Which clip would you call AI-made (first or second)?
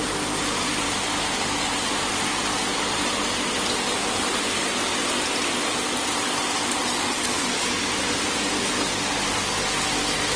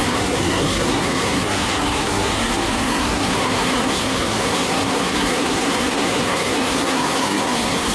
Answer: second